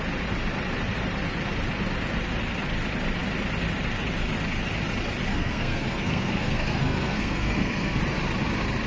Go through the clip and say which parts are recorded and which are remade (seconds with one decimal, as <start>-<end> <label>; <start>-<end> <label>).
0.0-5.3 recorded; 5.3-8.0 remade; 8.0-8.9 recorded